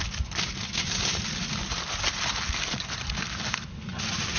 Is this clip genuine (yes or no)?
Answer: yes